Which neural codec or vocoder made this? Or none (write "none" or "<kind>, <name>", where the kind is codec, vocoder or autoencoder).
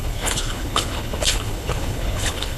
codec, HILCodec